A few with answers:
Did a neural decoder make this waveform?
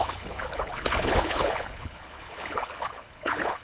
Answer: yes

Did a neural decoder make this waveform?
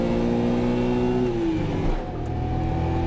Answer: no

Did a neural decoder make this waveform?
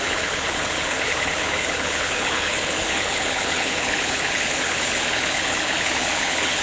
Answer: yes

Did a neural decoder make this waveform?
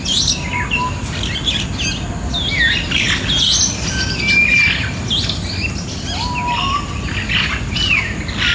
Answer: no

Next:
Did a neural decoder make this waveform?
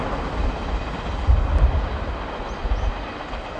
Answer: no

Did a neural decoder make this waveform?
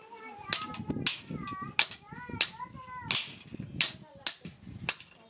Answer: no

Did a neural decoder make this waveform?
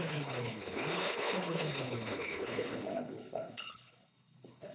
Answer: yes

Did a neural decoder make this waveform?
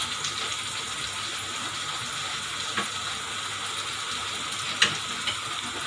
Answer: no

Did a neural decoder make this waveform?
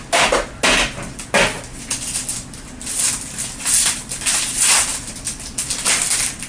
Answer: no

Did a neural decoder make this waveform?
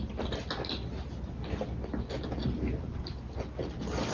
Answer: no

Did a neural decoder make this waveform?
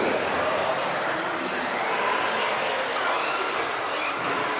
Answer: no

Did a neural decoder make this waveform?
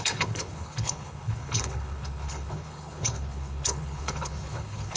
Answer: yes